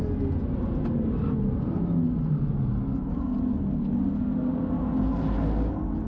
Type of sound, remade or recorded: recorded